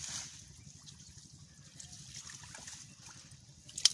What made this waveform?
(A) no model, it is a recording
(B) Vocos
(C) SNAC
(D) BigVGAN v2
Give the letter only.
A